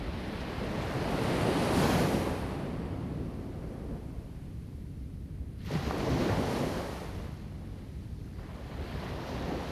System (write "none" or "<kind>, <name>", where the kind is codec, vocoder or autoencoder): none